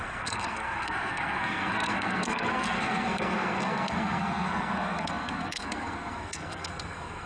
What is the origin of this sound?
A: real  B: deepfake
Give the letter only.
B